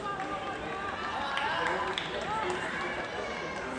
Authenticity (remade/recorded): recorded